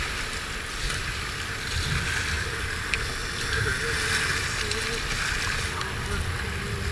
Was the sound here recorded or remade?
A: recorded